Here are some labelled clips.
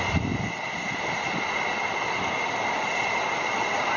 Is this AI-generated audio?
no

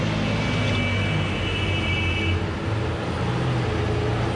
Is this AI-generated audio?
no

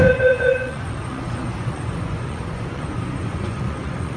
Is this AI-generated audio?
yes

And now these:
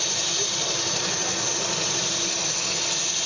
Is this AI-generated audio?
no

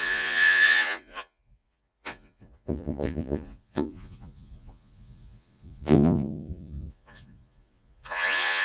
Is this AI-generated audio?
yes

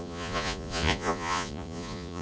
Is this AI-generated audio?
yes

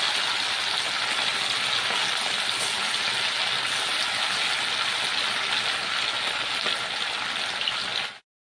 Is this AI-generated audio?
no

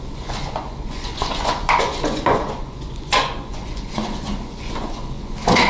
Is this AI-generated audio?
yes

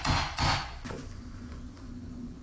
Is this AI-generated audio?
yes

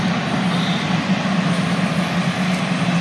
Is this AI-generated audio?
no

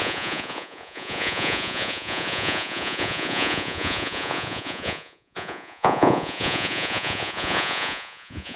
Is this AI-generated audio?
yes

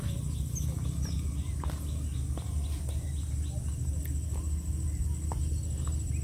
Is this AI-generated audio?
no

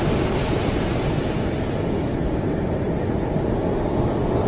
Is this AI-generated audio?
no